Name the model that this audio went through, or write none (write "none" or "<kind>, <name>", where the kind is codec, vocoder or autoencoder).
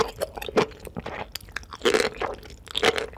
none